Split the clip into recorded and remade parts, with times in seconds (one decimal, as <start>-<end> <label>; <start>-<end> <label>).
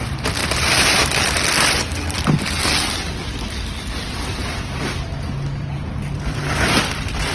0.0-7.3 recorded